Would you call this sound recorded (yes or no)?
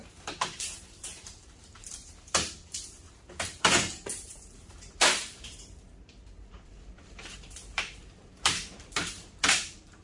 no